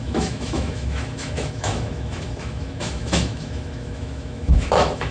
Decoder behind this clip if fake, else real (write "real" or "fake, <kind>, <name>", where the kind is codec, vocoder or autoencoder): fake, autoencoder, DAC-VAE